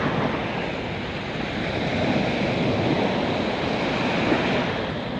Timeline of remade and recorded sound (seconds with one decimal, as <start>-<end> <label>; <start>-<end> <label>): 0.0-5.2 recorded